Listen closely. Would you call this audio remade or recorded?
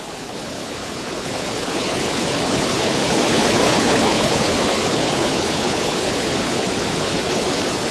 remade